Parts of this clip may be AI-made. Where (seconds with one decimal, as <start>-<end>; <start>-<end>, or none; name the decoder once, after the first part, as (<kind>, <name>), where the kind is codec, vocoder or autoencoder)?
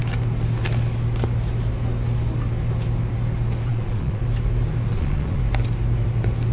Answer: 3.7-4.2 (vocoder, Vocos); 4.9-5.4